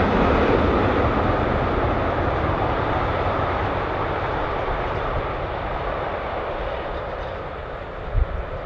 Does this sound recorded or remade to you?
recorded